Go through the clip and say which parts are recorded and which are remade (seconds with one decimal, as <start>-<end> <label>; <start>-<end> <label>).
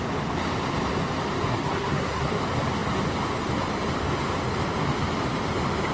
0.0-1.5 recorded; 1.5-2.3 remade; 2.3-5.9 recorded